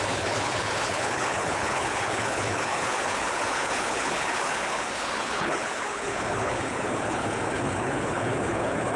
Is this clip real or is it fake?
fake